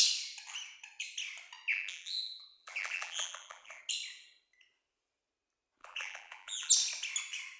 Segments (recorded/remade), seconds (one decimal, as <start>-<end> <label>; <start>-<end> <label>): 0.0-1.7 recorded; 1.7-3.8 remade; 3.8-5.8 recorded; 5.8-6.7 remade; 6.7-7.6 recorded